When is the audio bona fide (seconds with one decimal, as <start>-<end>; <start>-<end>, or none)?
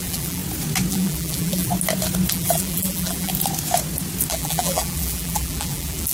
0.4-0.9; 1.7-2.3; 3.3-4.3